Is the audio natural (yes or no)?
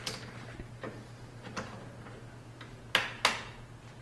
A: yes